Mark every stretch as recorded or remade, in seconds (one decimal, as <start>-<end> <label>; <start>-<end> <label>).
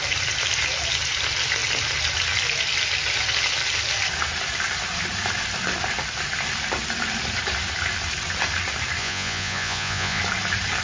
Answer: 0.0-9.0 recorded; 9.0-10.2 remade; 10.2-10.8 recorded